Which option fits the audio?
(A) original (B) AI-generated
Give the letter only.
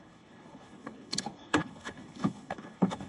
B